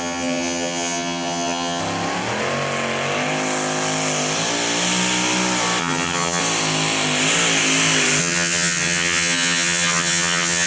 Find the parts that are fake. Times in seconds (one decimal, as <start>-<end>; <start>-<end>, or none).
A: 0.0-1.8; 5.8-6.4; 8.2-10.7